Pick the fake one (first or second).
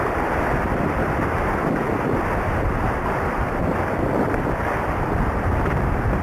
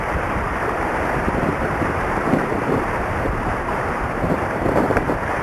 second